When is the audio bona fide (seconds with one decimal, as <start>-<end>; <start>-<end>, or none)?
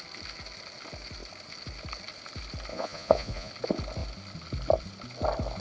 0.0-2.7; 3.5-5.6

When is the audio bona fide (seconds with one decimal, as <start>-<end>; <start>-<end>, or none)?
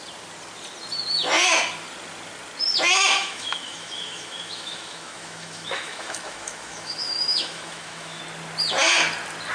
0.0-3.2; 8.2-9.5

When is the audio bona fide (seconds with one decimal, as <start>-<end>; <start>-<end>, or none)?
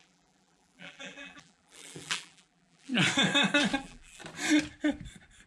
2.9-3.8; 4.2-5.5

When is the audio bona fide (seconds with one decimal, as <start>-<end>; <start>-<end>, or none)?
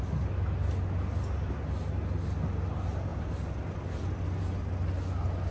0.0-3.1; 4.2-5.5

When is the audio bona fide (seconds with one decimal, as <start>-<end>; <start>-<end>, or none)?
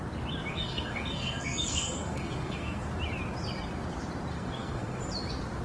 0.0-0.5; 2.8-4.3; 5.0-5.6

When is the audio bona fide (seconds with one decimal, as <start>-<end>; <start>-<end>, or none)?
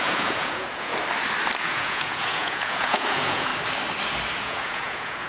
0.9-1.6; 3.5-4.4